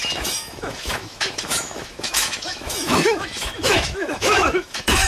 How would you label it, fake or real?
fake